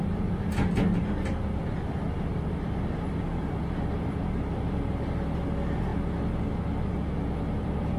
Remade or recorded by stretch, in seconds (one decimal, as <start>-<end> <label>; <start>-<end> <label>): 0.0-8.0 recorded